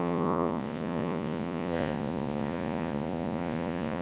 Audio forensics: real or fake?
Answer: fake